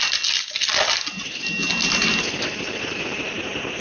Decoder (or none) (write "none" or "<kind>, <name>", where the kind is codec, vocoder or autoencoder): none